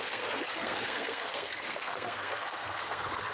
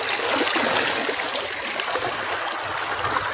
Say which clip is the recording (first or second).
second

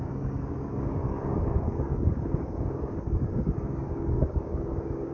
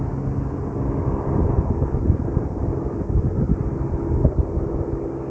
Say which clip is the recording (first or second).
second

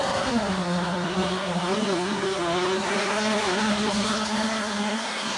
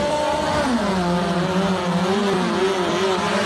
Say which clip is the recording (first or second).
second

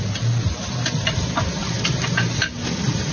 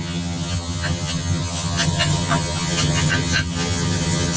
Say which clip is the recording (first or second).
first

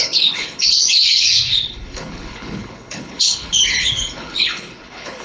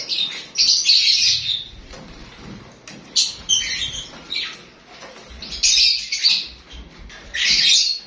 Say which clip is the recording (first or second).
second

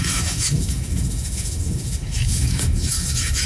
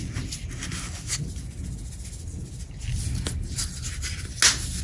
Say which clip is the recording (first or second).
second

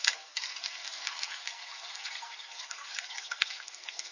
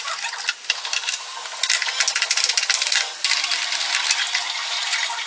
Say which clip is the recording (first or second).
second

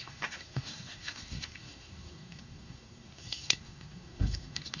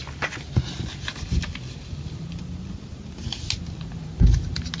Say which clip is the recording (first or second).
second